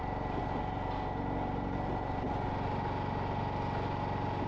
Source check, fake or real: real